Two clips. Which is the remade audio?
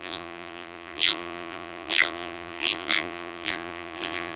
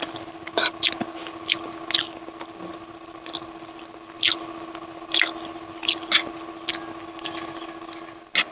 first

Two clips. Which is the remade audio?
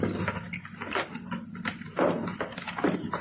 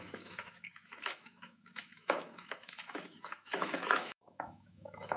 second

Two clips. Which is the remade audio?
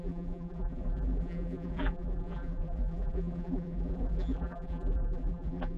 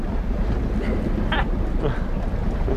first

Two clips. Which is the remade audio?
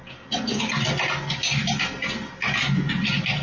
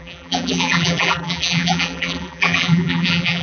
second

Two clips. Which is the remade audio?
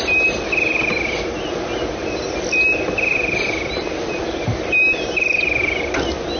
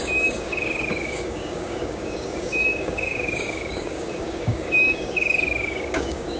second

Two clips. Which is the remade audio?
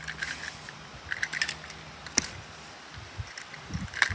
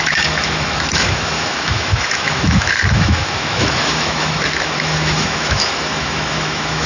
second